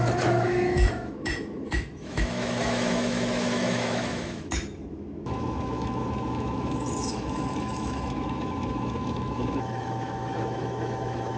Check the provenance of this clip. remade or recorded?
remade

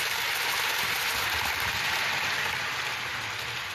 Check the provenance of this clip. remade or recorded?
remade